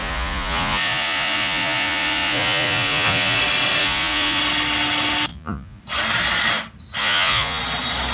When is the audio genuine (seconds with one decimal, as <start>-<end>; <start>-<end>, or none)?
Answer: 3.4-3.8; 4.4-5.3; 5.8-7.0; 7.6-8.1

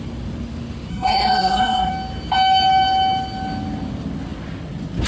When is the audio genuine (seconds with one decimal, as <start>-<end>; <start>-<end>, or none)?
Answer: 0.0-0.9; 1.9-5.1

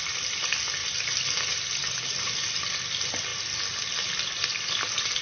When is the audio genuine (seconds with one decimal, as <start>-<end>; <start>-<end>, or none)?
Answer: 3.3-4.1

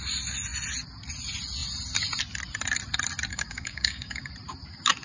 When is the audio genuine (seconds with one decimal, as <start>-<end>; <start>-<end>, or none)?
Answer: 0.0-3.3; 4.3-5.0